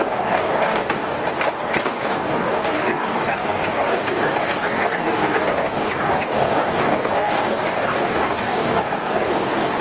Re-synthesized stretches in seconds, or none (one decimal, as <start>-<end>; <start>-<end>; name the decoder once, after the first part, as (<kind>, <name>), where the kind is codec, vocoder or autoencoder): 0.0-1.2 (codec, DAC); 1.8-9.8